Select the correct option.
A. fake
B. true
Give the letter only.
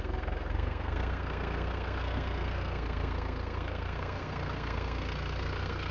A